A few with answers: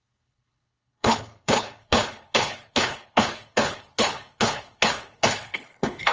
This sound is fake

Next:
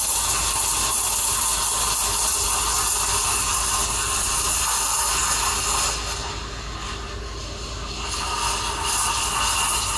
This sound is real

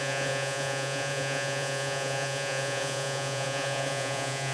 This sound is fake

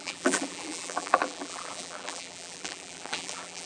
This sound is fake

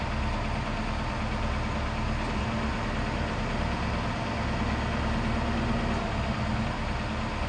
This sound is real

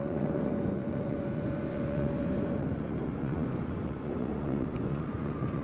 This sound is fake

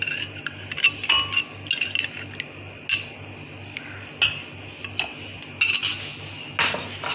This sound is real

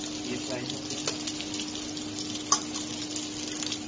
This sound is real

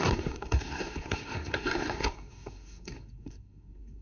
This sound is fake